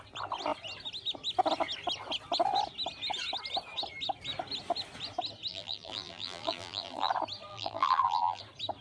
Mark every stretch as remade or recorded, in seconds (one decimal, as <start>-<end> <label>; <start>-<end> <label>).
0.0-5.5 recorded; 5.5-7.1 remade; 7.1-7.5 recorded; 7.5-8.4 remade; 8.4-8.8 recorded